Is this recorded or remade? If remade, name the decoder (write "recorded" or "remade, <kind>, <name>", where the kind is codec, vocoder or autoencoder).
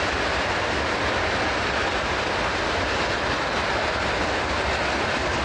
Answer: recorded